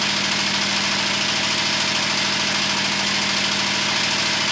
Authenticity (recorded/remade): recorded